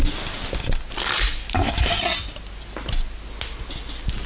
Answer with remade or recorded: recorded